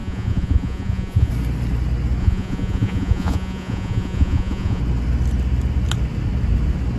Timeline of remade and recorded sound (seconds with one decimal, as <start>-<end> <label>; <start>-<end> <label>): 0.0-1.3 remade; 1.3-2.2 recorded; 2.2-4.8 remade; 4.8-7.0 recorded